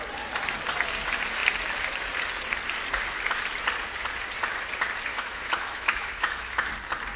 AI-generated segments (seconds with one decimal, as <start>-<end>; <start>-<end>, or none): 5.1-6.7